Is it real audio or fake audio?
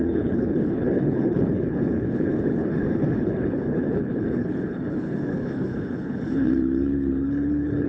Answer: fake